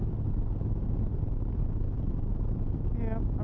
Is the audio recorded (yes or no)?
yes